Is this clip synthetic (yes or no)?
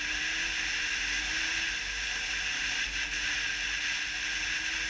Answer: no